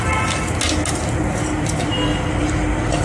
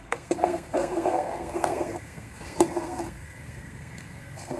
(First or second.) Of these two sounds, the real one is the first